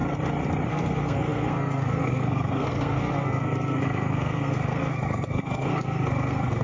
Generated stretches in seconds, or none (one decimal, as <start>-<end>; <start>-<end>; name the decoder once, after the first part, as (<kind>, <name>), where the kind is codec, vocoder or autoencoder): 0.7-6.6 (codec, SNAC)